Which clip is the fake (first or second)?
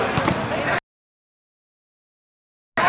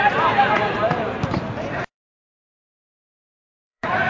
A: second